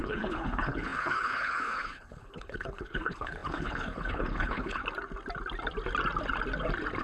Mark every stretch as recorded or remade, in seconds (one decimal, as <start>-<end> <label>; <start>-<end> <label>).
0.0-4.8 remade; 4.8-7.0 recorded